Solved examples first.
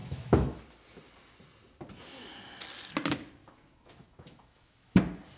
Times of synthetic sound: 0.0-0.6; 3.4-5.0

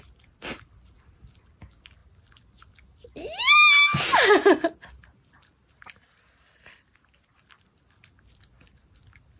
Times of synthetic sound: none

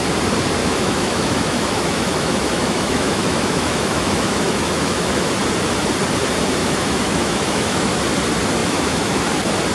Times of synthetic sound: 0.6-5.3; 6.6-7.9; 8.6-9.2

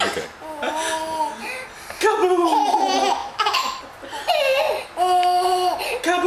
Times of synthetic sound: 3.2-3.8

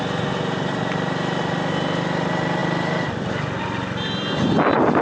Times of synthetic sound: none

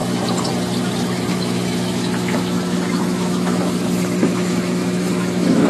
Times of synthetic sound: 1.3-3.6; 4.2-5.7

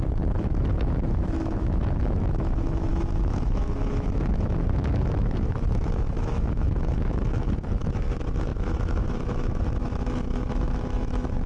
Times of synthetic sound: 0.0-11.5